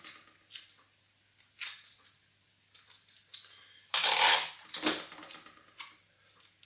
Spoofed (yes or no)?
no